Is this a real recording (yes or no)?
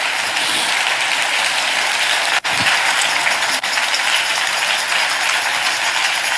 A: yes